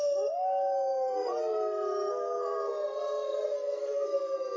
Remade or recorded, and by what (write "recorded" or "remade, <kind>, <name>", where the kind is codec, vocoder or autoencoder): remade, codec, SNAC